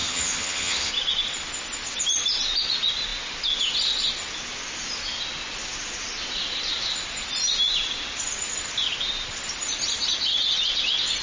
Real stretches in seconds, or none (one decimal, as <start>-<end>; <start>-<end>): 0.9-11.2